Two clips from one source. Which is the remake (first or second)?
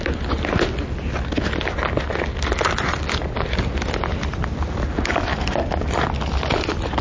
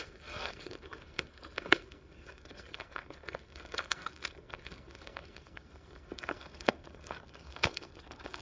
second